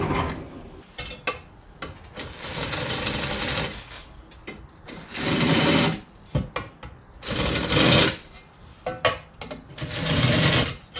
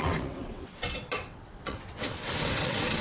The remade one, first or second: second